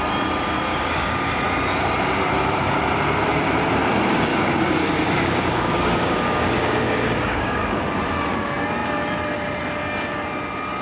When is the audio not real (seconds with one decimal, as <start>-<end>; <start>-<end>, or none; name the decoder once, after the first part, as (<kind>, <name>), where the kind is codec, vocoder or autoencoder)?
0.7-1.3 (codec, DAC); 4.3-7.8